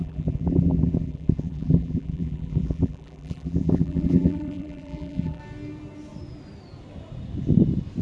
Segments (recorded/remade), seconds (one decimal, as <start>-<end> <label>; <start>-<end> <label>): 0.0-5.4 remade; 5.4-8.0 recorded